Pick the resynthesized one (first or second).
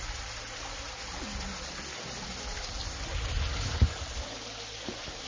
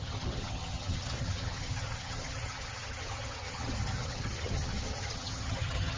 second